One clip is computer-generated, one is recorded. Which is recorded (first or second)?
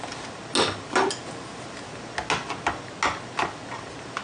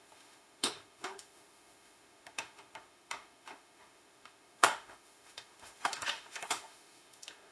first